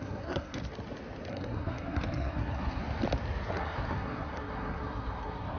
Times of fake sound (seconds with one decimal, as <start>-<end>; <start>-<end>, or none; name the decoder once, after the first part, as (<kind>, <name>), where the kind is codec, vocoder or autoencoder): 0.0-0.6 (codec, SNAC); 1.3-2.8; 3.5-5.6